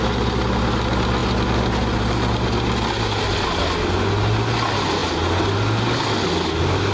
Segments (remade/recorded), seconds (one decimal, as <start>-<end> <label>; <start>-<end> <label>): 0.0-6.9 recorded